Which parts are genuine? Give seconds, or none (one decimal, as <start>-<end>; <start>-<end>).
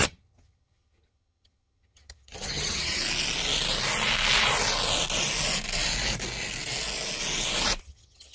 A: 3.0-7.8